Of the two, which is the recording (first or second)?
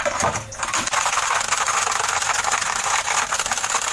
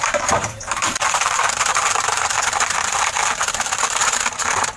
first